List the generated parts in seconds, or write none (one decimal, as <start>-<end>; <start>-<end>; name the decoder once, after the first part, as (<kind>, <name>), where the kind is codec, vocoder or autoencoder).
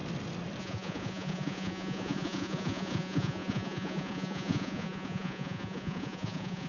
0.6-6.7 (vocoder, Vocos)